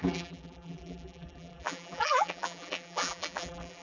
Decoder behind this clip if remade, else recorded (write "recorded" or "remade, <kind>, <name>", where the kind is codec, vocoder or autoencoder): remade, vocoder, BigVGAN v2